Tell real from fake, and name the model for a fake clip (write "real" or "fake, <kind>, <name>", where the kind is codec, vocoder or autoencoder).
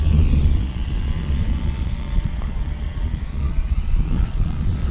fake, vocoder, Vocos